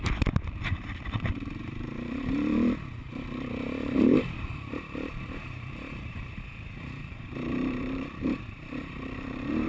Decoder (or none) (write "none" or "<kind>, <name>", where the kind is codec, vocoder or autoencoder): vocoder, BigVGAN v2